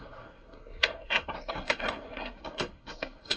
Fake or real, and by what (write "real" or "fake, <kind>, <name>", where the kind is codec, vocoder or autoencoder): fake, codec, SNAC